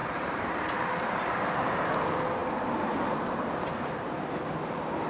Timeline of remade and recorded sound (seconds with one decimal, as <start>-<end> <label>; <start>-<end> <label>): 0.0-0.9 remade; 0.9-2.4 recorded; 2.4-3.0 remade; 3.0-5.1 recorded